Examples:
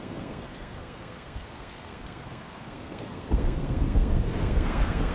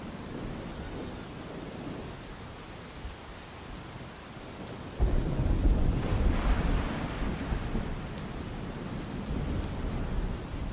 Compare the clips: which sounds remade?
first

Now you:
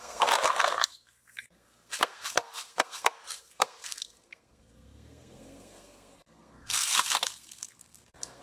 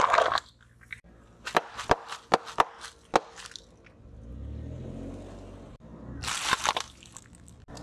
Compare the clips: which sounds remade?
first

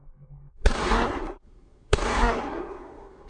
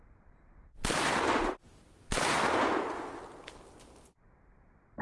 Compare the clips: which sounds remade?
first